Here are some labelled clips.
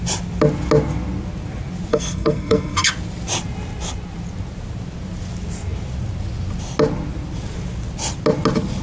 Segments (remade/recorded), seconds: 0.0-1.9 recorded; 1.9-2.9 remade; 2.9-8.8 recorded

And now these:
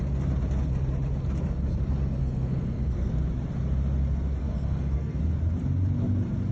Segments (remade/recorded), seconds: 0.0-2.2 recorded; 2.2-3.1 remade; 3.1-4.4 recorded; 4.4-5.2 remade; 5.2-6.5 recorded

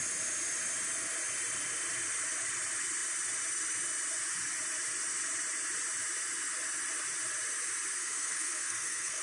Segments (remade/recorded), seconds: 0.0-8.0 recorded; 8.0-9.2 remade

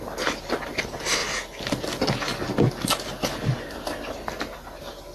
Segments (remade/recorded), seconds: 0.0-5.1 recorded